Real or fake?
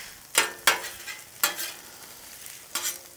real